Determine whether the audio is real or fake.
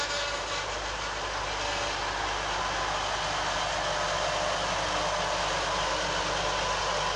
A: real